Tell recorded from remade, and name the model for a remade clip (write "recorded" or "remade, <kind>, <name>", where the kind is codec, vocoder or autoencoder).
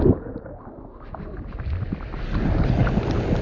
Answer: recorded